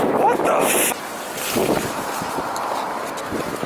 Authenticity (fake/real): real